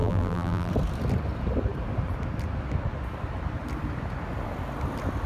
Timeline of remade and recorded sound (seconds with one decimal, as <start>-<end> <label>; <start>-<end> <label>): 0.0-0.7 remade; 0.7-5.3 recorded